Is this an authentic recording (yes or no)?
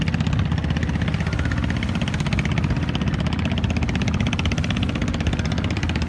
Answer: yes